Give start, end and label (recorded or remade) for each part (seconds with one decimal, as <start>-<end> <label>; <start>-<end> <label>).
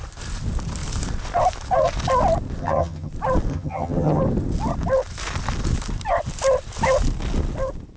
0.0-2.6 recorded; 2.6-3.1 remade; 3.1-3.5 recorded; 3.5-4.2 remade; 4.2-8.0 recorded